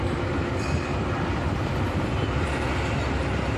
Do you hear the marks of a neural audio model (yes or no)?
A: no